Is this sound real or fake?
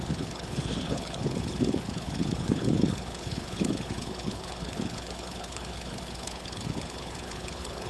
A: fake